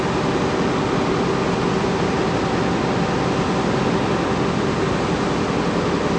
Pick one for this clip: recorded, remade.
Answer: recorded